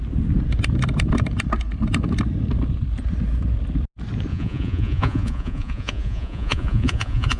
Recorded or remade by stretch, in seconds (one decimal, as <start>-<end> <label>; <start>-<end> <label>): 0.0-4.3 recorded; 4.3-7.4 remade